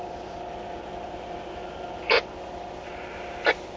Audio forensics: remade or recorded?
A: recorded